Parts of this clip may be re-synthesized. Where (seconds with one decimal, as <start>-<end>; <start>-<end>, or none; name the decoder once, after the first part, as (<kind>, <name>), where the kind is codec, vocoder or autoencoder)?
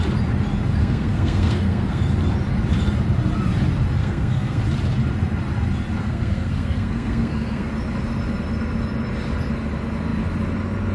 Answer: 0.8-2.0 (codec, SNAC); 4.0-4.6; 6.0-7.7